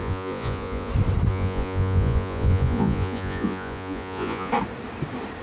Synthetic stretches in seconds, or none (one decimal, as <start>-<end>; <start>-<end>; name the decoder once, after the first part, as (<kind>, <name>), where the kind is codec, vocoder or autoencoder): 0.0-0.9 (vocoder, Vocos); 1.3-4.5

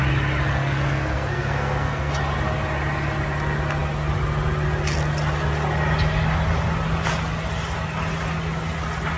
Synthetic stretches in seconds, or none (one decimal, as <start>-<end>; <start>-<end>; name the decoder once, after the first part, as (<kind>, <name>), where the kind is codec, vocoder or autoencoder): 0.5-2.1 (codec, SNAC)

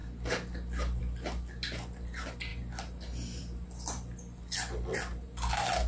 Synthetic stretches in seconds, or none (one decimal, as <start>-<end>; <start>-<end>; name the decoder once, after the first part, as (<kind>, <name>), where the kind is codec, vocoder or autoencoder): none

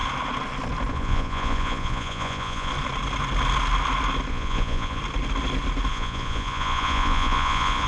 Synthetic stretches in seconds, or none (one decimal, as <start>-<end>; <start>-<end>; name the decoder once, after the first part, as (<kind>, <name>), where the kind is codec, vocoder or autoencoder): 0.9-2.7 (vocoder, Vocos); 4.3-5.0; 5.9-7.9

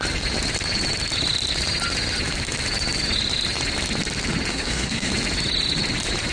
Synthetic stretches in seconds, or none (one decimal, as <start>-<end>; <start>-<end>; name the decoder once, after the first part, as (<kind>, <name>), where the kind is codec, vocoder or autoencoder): 4.5-5.1 (codec, SNAC)

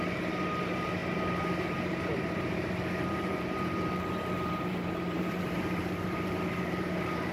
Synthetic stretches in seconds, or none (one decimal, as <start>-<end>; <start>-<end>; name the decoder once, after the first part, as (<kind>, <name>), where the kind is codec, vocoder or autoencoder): 0.0-7.3 (vocoder, BigVGAN v2)

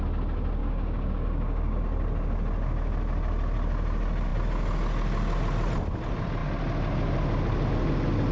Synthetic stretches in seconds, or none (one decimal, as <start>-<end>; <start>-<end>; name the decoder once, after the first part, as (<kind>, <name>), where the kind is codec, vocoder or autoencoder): 0.6-1.8 (codec, DAC)

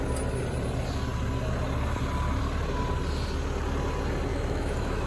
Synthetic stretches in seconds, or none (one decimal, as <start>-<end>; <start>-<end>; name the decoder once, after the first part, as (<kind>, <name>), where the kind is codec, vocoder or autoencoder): 4.3-5.1 (autoencoder, DAC-VAE)